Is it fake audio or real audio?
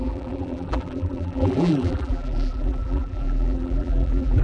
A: fake